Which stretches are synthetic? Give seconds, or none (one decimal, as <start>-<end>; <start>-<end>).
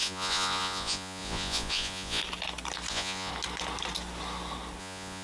0.0-2.2; 2.9-3.3; 4.8-5.2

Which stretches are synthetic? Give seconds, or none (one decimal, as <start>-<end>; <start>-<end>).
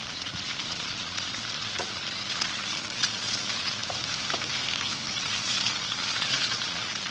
0.0-3.8; 5.1-7.1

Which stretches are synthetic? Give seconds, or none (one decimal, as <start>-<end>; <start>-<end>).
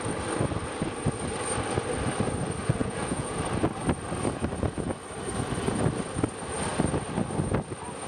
2.8-3.4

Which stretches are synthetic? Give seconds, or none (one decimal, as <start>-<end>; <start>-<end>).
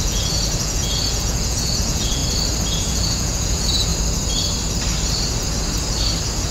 0.0-2.2; 2.7-3.9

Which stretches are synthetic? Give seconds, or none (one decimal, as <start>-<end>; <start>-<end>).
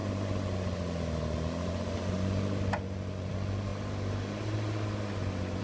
none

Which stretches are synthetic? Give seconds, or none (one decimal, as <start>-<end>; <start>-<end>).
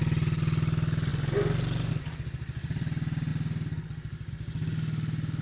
none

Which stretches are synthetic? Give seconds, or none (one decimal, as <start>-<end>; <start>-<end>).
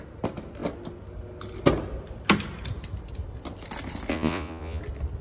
4.1-4.8